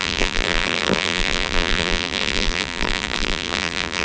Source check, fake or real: fake